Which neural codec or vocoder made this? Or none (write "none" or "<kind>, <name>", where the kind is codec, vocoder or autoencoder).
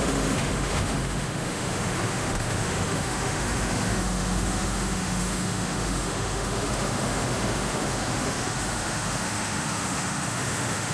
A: autoencoder, DAC-VAE